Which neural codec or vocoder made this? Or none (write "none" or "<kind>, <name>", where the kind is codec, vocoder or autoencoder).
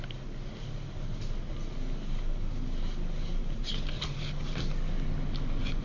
none